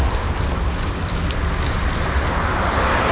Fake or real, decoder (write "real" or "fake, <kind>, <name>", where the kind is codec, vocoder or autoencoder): real